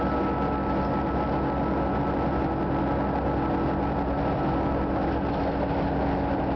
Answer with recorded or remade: recorded